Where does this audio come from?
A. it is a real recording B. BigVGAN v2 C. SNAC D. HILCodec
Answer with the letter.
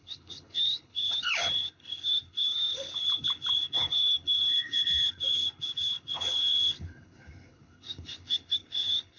D